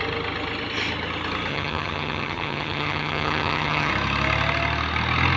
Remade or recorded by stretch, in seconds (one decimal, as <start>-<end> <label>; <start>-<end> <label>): 0.0-1.5 recorded; 1.5-3.9 remade; 3.9-5.4 recorded